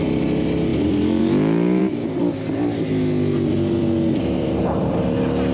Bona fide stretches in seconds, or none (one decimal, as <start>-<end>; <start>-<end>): 1.8-4.2